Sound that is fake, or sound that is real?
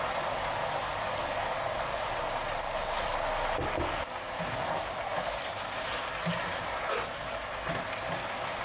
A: real